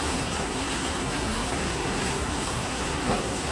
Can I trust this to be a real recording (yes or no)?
no